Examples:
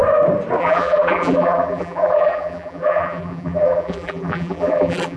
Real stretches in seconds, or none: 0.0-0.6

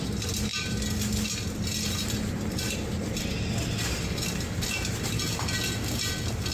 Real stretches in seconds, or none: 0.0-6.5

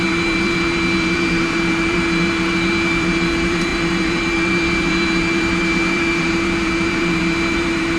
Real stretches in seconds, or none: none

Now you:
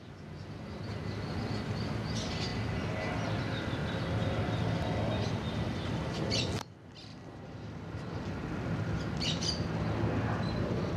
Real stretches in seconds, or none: 0.0-3.8; 4.3-7.1; 8.2-11.0

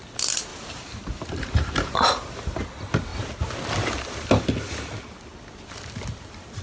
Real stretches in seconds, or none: 0.0-0.5; 2.6-6.6

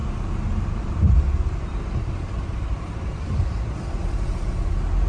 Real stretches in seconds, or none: 1.2-1.7